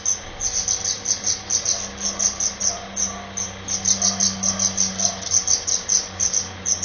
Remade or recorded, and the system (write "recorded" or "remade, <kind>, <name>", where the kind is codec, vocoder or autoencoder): recorded